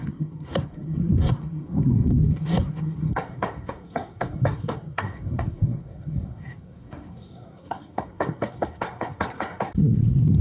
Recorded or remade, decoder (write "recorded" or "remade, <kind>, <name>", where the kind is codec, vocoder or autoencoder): remade, codec, SNAC